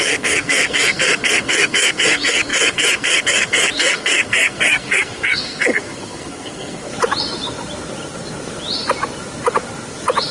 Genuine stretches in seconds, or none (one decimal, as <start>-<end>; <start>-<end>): 6.9-10.3